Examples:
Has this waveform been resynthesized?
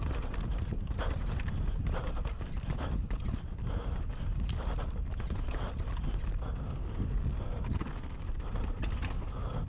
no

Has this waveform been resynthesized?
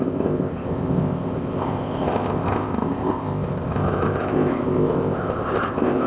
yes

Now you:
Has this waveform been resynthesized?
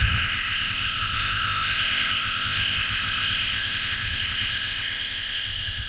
yes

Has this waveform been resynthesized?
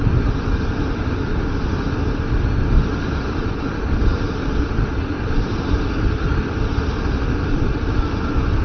no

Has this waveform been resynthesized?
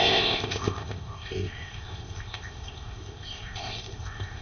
yes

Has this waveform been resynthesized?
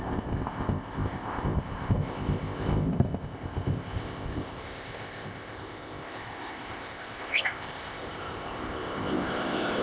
yes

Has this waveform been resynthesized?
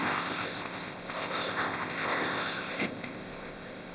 yes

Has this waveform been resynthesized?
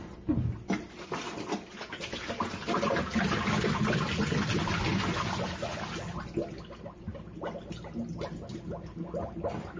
no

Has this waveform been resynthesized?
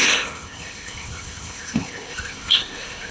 yes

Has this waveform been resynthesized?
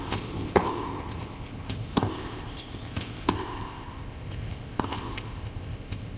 yes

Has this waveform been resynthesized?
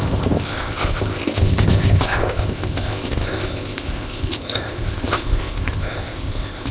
yes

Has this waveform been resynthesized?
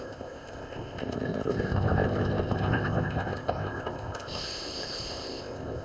yes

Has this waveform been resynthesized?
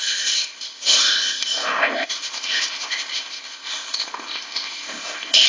yes